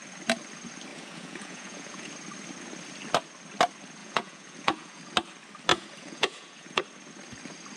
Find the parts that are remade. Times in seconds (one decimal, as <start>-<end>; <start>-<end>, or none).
0.9-2.1; 4.0-5.0; 5.7-6.8